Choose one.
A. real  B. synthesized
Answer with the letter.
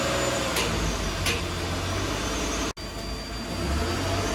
A